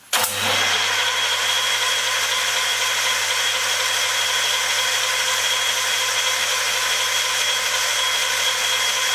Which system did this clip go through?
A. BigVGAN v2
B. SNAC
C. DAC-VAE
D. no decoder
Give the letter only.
D